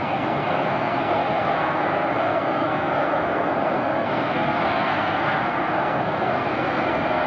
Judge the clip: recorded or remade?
remade